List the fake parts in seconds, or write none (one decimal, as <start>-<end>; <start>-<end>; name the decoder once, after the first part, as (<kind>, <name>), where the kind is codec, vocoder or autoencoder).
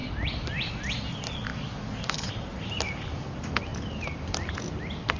1.5-2.3 (codec, DAC)